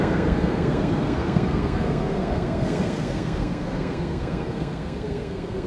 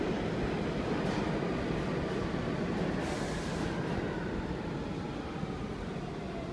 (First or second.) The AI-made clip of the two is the first